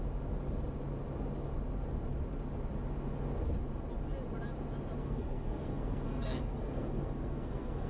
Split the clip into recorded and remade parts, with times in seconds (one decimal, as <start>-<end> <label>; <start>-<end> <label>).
0.0-5.0 recorded; 5.0-7.9 remade